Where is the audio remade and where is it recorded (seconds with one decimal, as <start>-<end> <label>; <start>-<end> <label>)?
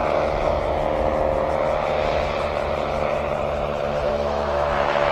0.0-4.1 recorded; 4.1-5.1 remade